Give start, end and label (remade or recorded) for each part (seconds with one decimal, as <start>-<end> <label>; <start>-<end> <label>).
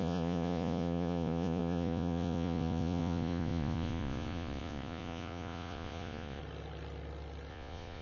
0.0-6.4 remade; 6.4-7.5 recorded; 7.5-8.0 remade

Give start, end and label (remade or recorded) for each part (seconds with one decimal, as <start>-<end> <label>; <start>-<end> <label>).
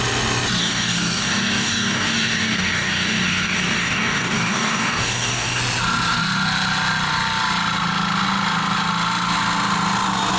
0.0-0.6 recorded; 0.6-5.6 remade; 5.6-10.4 recorded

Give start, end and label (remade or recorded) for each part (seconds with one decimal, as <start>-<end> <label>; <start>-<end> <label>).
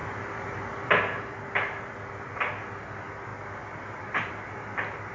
0.0-5.1 recorded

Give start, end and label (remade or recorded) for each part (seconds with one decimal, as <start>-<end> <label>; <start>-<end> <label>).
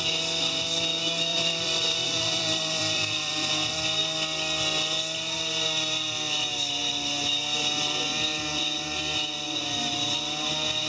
0.0-1.3 recorded; 1.3-3.5 remade; 3.5-10.9 recorded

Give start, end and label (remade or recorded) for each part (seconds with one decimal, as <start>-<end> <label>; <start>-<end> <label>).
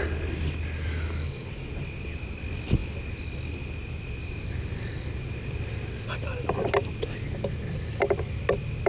0.0-8.9 recorded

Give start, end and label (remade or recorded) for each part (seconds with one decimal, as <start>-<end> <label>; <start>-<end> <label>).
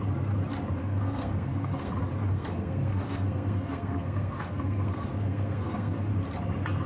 0.0-0.8 recorded; 0.8-1.9 remade; 1.9-2.3 recorded; 2.3-6.1 remade; 6.1-6.9 recorded